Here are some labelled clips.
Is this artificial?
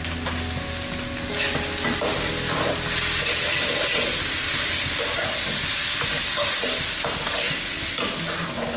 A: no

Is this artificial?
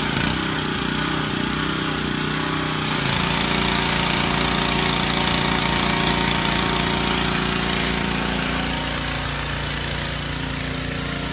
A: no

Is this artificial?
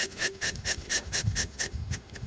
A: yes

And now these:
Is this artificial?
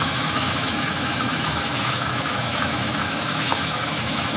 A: yes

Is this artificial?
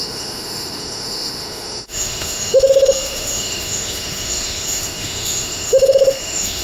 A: yes